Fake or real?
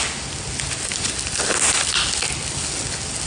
real